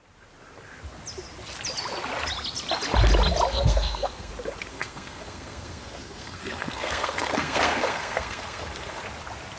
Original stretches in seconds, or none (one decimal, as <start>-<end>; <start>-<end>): 0.0-3.5; 4.3-4.7; 9.0-9.6